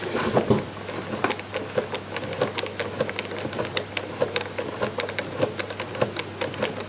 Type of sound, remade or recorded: recorded